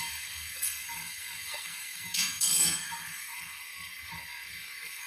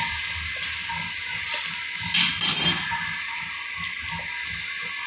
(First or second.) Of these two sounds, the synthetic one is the first